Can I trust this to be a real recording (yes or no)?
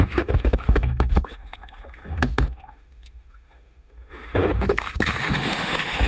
no